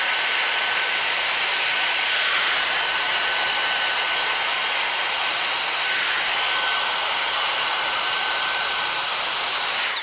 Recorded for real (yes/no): no